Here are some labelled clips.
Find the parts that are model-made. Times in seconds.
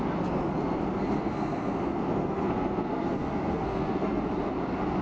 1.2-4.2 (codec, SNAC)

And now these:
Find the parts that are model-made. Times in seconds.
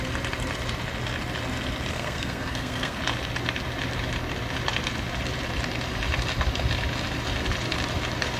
1.9-3.0 (codec, SNAC)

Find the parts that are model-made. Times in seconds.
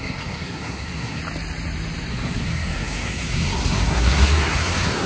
0.0-1.2 (codec, SNAC); 2.1-5.1